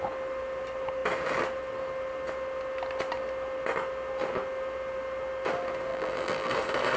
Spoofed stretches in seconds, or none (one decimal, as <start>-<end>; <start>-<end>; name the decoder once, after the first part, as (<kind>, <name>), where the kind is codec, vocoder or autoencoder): 5.9-6.5 (vocoder, BigVGAN v2)